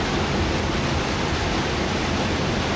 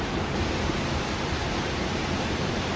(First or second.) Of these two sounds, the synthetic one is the second